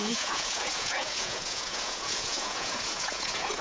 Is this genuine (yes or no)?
no